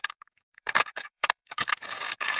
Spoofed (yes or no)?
yes